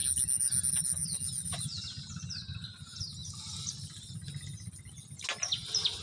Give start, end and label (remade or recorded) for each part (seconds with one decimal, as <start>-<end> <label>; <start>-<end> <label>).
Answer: 0.0-6.0 recorded